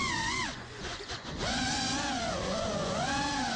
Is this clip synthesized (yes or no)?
yes